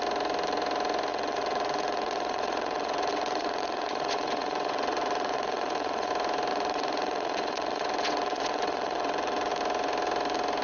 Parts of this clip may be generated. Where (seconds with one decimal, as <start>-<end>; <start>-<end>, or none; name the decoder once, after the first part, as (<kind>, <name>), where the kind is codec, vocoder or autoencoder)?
1.1-6.1 (vocoder, WaveNeXt); 6.5-9.5

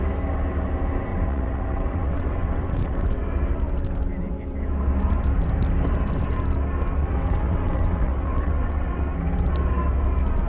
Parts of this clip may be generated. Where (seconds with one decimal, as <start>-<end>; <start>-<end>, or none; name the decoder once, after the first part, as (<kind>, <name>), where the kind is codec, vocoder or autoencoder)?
1.1-3.2 (vocoder, WaveNeXt); 7.0-9.0

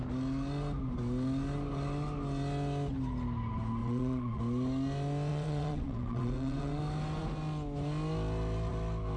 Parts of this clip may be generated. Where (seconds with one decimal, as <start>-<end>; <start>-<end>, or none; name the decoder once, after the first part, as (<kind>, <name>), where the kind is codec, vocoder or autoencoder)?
3.8-4.4 (vocoder, WaveNeXt); 5.3-6.8

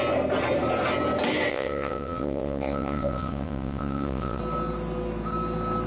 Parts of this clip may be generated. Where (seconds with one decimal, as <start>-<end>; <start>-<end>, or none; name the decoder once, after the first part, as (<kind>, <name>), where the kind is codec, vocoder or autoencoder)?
1.5-4.4 (vocoder, WaveNeXt)

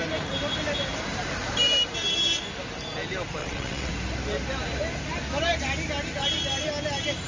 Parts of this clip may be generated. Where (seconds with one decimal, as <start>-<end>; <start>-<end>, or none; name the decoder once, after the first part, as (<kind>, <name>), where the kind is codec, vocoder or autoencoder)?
3.4-3.9 (vocoder, WaveNeXt)

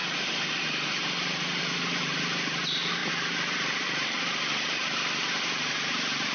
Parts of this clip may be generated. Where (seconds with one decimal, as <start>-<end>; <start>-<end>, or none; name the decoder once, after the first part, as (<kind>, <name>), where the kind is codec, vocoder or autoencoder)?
none